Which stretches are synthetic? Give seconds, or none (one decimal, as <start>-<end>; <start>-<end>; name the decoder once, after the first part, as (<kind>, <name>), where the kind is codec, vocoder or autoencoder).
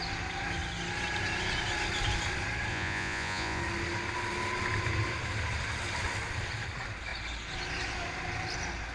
2.7-3.6 (vocoder, Vocos)